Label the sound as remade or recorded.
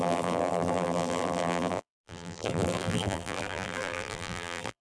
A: remade